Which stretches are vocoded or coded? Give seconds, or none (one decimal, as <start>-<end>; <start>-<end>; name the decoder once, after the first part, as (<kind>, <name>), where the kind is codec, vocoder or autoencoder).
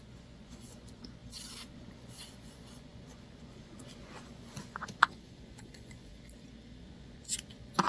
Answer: 0.0-1.2 (vocoder, Vocos); 1.8-6.1; 6.8-7.9